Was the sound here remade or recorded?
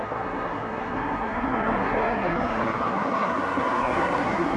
remade